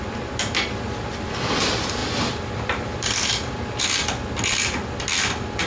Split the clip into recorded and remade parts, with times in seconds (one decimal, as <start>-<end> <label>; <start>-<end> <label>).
0.0-2.0 recorded; 2.0-3.8 remade; 3.8-5.7 recorded